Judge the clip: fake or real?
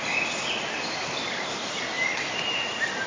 real